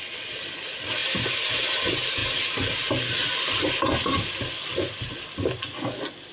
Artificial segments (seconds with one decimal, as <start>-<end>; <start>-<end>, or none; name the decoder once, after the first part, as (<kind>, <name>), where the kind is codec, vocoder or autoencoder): none